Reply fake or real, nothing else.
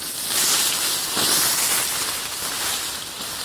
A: real